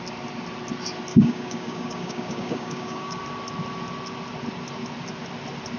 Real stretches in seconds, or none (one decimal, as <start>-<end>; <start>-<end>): 0.0-1.1; 3.2-5.8